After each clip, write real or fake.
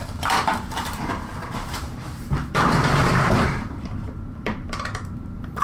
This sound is fake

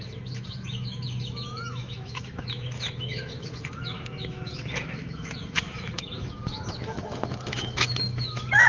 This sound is fake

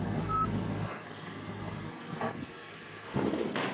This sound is fake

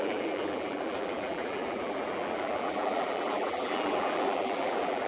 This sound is fake